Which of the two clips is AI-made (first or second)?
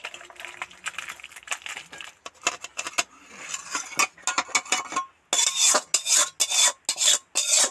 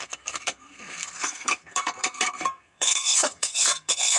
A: second